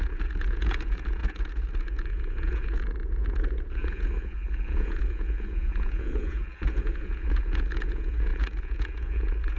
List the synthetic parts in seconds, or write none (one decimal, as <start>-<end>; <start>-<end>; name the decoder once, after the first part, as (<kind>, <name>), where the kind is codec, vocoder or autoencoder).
0.0-9.6 (vocoder, Vocos)